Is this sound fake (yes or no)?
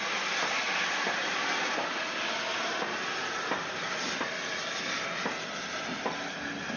no